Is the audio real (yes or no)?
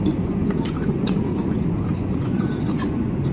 no